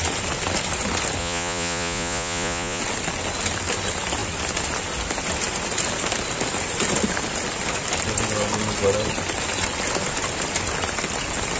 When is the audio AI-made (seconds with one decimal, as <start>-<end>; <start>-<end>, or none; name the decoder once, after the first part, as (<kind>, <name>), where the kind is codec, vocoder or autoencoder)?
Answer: 1.2-2.8 (vocoder, Vocos)